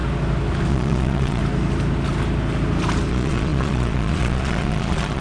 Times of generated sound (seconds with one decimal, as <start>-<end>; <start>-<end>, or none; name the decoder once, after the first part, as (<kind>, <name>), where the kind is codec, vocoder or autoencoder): 0.7-1.4 (vocoder, Vocos); 3.1-5.2